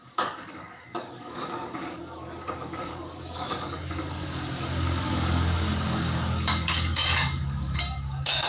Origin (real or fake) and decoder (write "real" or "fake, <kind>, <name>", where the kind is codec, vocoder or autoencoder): fake, codec, DAC